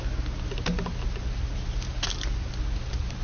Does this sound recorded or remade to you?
recorded